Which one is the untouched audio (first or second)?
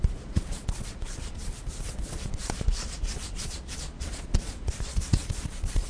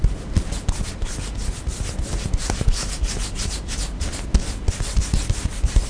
second